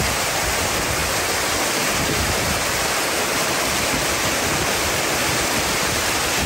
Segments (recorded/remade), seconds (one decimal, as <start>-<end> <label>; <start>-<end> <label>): 0.0-6.5 recorded